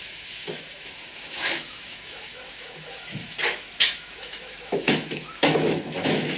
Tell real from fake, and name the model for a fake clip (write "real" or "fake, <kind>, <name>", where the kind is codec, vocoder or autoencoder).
fake, autoencoder, DAC-VAE